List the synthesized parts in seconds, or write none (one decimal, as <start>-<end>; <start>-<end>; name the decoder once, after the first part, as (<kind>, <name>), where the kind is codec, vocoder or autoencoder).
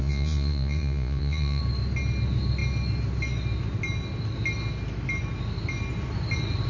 0.0-1.6 (vocoder, Vocos)